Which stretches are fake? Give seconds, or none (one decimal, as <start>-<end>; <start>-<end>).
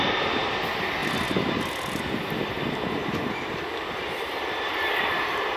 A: none